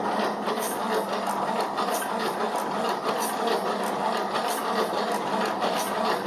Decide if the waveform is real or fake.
real